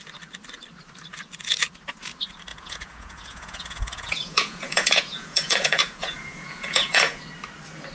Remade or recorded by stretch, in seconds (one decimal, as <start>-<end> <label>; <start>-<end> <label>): 0.0-2.5 recorded; 2.5-7.2 remade; 7.2-7.9 recorded